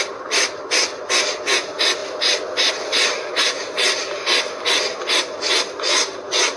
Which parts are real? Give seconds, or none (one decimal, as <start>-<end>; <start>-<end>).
0.0-6.6